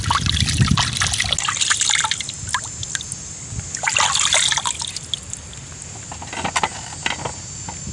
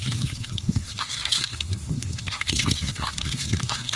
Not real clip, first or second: second